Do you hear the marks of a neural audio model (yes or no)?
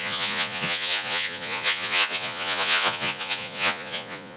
yes